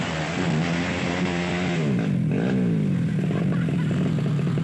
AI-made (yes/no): no